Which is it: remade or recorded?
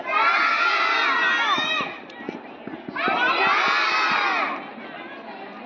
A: recorded